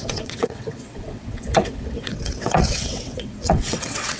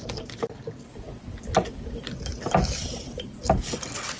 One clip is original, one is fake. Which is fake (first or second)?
first